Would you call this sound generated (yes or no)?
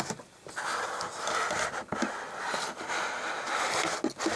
no